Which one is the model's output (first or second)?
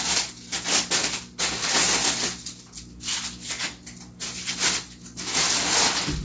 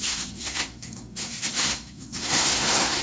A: second